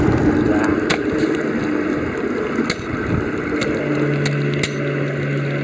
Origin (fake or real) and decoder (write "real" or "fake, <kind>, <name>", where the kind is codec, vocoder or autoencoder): real